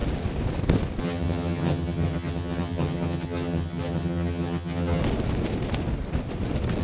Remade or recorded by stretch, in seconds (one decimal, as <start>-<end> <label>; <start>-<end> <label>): 0.0-1.0 recorded; 1.0-5.0 remade; 5.0-6.8 recorded